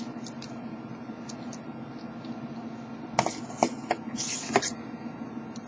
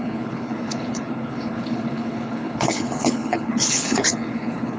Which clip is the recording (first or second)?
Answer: first